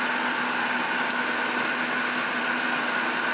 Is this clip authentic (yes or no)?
yes